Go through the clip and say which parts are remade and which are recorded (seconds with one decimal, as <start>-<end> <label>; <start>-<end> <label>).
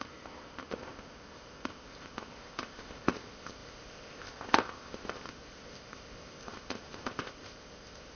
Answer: 0.0-8.2 remade